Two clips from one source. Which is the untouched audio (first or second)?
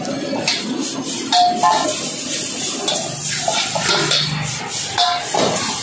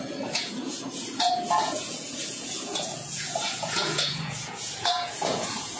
first